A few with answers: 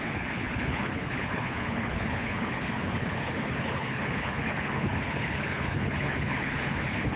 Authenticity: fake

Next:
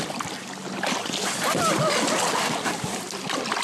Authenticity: real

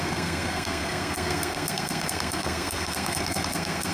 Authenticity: fake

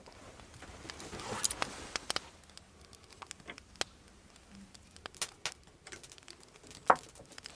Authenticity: real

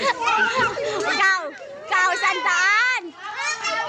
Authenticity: real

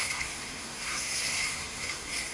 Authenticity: fake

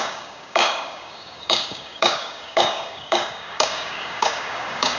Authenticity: fake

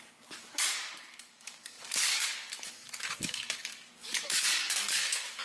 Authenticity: fake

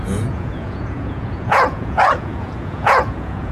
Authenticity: fake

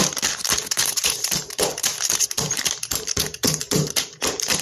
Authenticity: fake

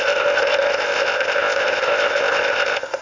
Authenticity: fake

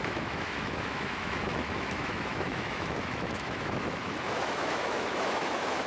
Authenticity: fake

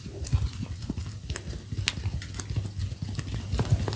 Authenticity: real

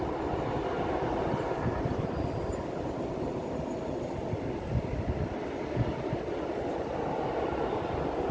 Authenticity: real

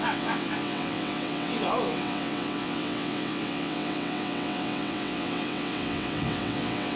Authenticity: fake